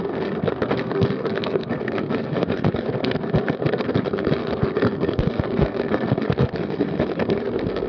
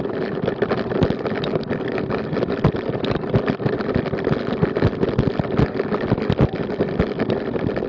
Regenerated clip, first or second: first